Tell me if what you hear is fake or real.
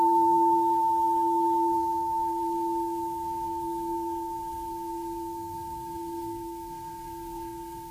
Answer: fake